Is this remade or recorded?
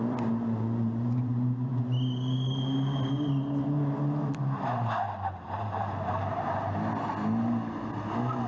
recorded